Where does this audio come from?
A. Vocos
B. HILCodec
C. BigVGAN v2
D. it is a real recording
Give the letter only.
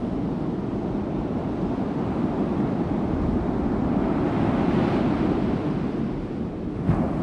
D